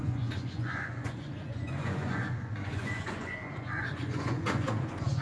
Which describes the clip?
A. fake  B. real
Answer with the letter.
A